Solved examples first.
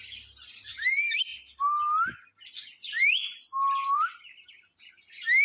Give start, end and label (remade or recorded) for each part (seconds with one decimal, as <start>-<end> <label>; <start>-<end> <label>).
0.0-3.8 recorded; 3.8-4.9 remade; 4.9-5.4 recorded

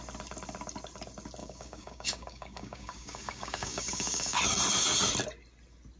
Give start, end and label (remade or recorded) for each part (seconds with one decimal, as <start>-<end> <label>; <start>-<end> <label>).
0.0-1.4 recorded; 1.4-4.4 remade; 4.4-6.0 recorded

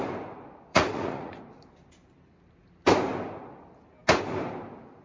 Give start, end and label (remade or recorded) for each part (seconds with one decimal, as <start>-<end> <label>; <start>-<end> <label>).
0.0-0.7 recorded; 0.7-1.4 remade; 1.4-5.0 recorded

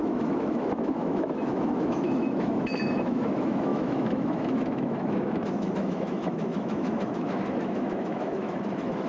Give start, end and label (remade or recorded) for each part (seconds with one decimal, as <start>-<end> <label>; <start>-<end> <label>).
0.0-9.1 remade

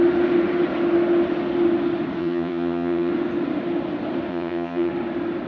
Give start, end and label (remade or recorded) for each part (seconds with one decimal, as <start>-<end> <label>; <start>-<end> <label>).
0.0-2.2 recorded; 2.2-3.1 remade; 3.1-4.3 recorded; 4.3-4.9 remade; 4.9-5.5 recorded

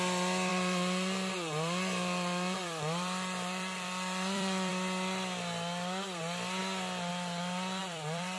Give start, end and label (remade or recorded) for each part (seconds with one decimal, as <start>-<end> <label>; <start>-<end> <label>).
0.0-0.5 recorded; 0.5-4.7 remade; 4.7-7.8 recorded; 7.8-8.4 remade

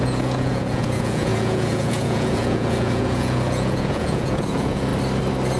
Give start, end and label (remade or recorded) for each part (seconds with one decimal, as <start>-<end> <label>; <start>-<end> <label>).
0.0-4.9 remade; 4.9-5.6 recorded

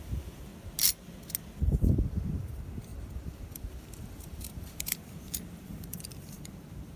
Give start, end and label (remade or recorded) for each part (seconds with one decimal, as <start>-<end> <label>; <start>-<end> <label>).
0.0-0.5 remade; 0.5-1.6 recorded; 1.6-7.0 remade